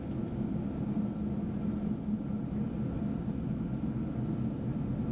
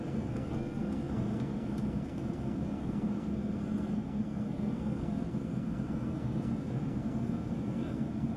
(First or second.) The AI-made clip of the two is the second